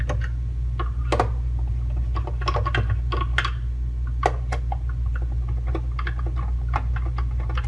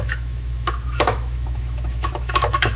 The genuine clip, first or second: first